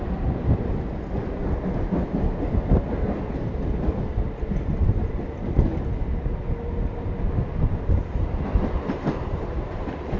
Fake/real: real